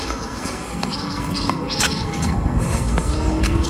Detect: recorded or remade remade